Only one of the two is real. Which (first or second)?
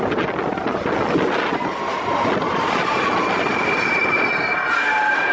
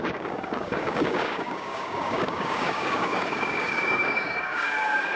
first